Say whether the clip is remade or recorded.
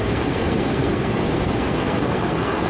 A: remade